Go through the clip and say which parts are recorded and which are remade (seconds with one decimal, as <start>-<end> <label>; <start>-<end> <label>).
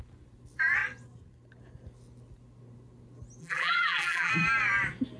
0.0-3.4 recorded; 3.4-4.3 remade; 4.3-5.2 recorded